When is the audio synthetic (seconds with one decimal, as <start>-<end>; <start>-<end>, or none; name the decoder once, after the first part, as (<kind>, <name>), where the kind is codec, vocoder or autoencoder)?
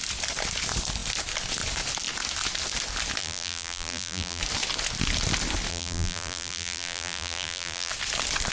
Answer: 3.2-4.4 (vocoder, BigVGAN v2); 5.7-7.9